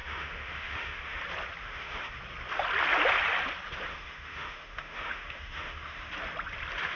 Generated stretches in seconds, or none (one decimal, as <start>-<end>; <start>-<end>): 0.0-1.2; 1.6-2.2; 3.9-6.1